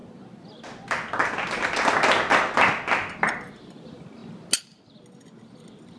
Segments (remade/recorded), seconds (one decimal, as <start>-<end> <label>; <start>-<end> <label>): 0.0-6.0 recorded